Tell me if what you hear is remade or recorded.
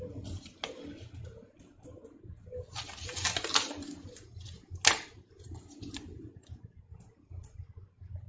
recorded